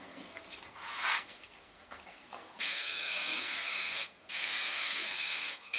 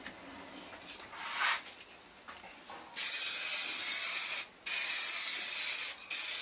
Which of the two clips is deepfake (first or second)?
first